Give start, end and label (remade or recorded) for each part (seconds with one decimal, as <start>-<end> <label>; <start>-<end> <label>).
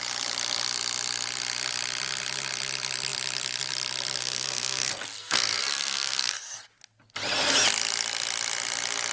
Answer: 0.0-4.2 recorded; 4.2-6.6 remade; 6.6-9.1 recorded